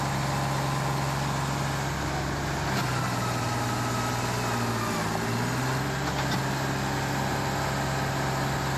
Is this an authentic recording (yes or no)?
yes